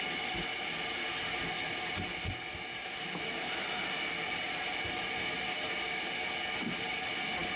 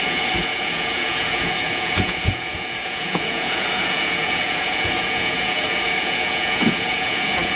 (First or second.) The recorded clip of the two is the first